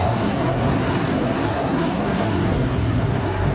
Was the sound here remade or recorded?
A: remade